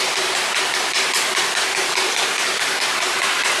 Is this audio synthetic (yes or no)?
no